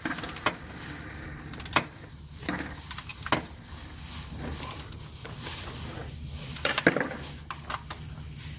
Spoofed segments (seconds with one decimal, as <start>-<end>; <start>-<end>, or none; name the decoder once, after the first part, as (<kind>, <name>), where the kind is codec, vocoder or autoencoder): none